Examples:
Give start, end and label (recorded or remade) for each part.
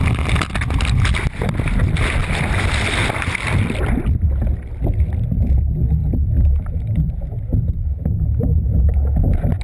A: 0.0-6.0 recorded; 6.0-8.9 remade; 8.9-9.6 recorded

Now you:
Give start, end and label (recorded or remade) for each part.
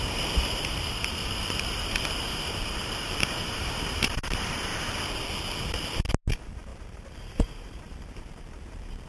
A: 0.0-4.7 remade; 4.7-6.3 recorded; 6.3-9.1 remade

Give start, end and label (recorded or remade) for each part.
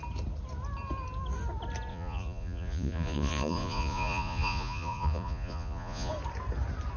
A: 0.0-1.9 recorded; 1.9-6.1 remade; 6.1-7.0 recorded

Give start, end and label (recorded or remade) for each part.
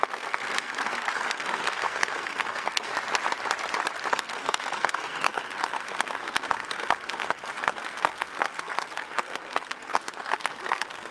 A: 0.0-2.9 remade; 2.9-4.1 recorded; 4.1-11.1 remade